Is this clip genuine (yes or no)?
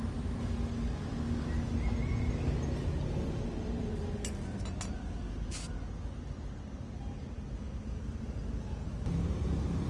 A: yes